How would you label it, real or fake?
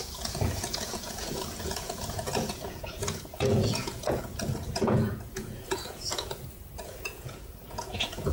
fake